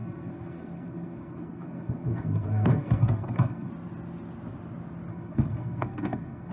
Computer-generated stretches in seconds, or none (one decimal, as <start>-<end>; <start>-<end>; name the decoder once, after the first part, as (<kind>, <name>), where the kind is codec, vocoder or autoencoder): 0.0-3.7 (codec, SNAC); 5.1-6.5